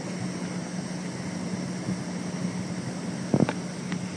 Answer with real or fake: real